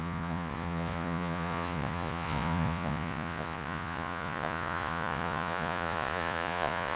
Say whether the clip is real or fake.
fake